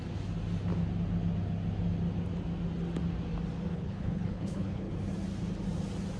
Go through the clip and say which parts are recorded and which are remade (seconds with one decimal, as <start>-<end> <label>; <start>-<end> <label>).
0.0-3.7 recorded; 3.7-4.9 remade; 4.9-6.2 recorded